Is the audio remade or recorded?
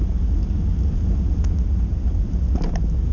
recorded